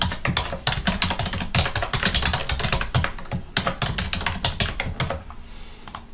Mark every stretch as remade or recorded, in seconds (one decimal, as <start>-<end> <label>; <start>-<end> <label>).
0.0-6.1 recorded